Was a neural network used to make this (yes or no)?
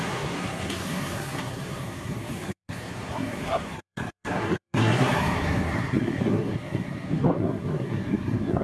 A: yes